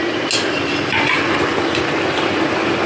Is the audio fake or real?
real